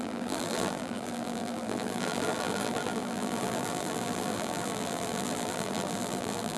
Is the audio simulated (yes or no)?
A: yes